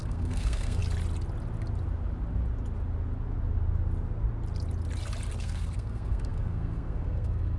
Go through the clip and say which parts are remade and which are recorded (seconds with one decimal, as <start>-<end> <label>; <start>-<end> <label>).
0.0-0.8 remade; 0.8-5.4 recorded; 5.4-7.6 remade